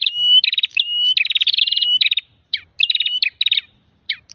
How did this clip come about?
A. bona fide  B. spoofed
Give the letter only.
A